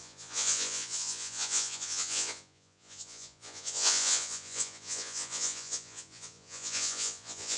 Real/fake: fake